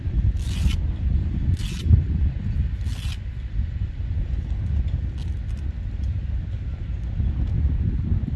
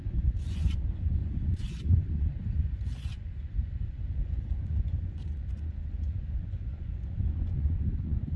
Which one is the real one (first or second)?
first